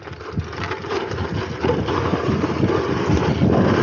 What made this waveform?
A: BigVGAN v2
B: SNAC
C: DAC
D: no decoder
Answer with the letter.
D